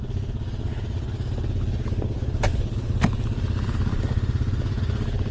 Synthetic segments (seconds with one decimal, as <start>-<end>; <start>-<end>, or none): none